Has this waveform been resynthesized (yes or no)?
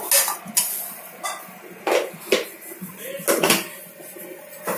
no